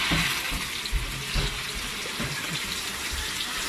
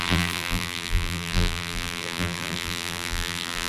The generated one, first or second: second